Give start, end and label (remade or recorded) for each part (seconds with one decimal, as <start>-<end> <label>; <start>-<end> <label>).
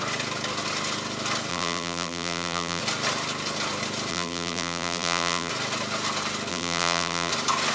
0.0-1.5 recorded; 1.5-2.8 remade; 2.8-4.1 recorded; 4.1-5.5 remade; 5.5-6.5 recorded; 6.5-7.3 remade; 7.3-7.7 recorded